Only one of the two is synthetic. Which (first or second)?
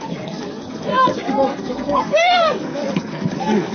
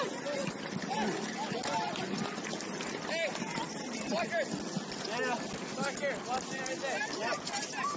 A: first